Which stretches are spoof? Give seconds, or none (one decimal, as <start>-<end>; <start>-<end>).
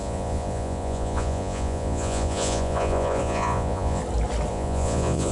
0.0-4.0; 4.5-5.3